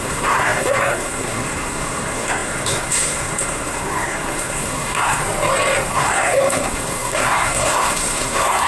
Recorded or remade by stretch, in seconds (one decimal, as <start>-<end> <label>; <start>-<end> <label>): 0.0-5.2 remade; 5.2-5.9 recorded; 5.9-8.7 remade